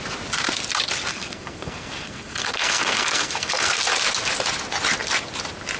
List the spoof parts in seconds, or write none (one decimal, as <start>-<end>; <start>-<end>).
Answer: 1.1-3.8